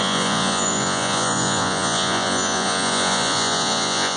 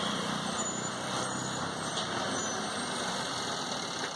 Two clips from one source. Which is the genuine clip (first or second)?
second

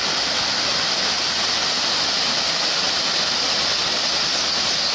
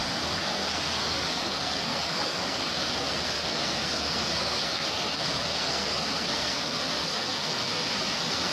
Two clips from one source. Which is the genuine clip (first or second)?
first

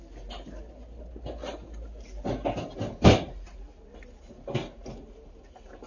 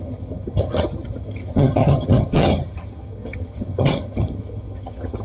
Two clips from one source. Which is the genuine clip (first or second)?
first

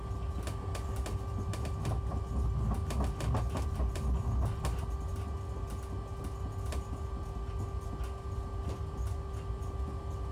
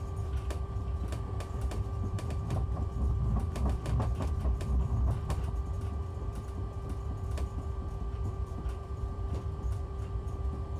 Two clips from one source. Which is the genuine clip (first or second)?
first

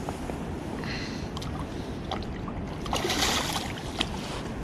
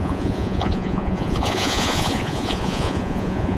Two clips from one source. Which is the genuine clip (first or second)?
first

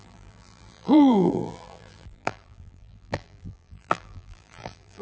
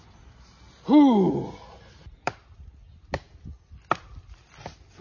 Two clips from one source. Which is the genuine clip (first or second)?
second